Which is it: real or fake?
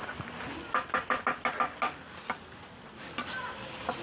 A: real